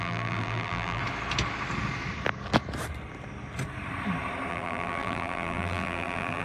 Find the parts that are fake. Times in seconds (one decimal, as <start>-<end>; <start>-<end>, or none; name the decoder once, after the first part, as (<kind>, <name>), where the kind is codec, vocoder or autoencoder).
0.0-1.0 (vocoder, BigVGAN v2); 4.5-6.4